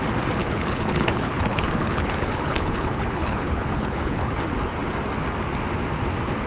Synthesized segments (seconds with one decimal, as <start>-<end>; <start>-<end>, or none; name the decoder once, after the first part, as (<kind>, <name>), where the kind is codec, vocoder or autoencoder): 0.4-4.3 (codec, HILCodec)